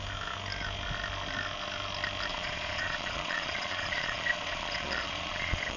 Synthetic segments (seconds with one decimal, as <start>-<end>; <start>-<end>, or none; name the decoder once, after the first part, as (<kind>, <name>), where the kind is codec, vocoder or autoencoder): 2.3-5.8 (vocoder, Vocos)